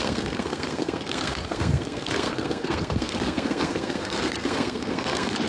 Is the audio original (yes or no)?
no